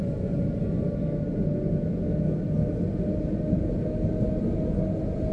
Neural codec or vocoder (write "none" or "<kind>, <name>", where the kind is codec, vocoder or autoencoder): none